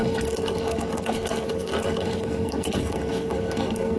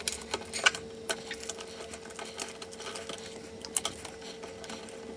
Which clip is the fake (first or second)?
first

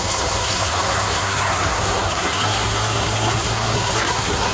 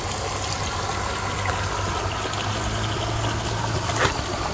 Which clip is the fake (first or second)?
first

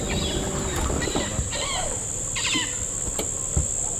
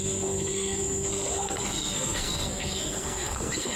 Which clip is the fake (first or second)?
second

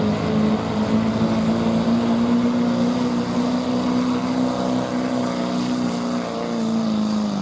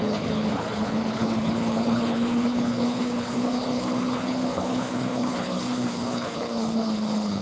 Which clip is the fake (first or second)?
second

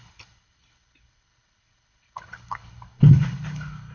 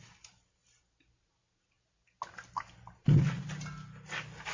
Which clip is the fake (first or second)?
first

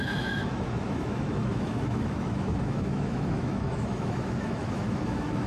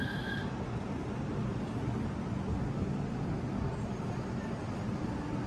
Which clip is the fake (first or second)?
first